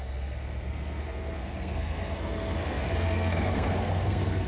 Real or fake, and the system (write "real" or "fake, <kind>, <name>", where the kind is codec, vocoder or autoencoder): fake, codec, SNAC